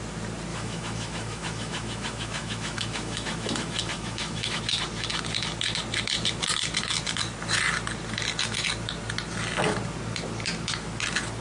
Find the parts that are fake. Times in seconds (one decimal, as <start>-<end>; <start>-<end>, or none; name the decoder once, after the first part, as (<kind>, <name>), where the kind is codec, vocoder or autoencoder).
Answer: 0.5-4.6 (autoencoder, DAC-VAE)